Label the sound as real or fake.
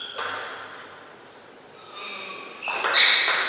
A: real